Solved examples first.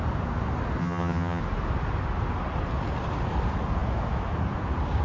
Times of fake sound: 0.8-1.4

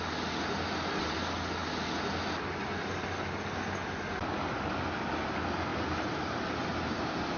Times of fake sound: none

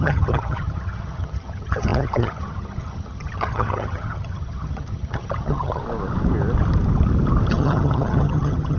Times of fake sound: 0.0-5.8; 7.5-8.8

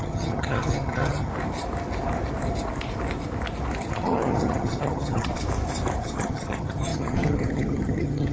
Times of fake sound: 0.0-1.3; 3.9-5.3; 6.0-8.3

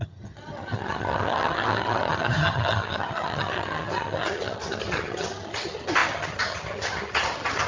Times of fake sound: 0.0-7.7